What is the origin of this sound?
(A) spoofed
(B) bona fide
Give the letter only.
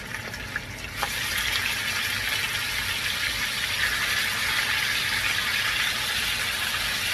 B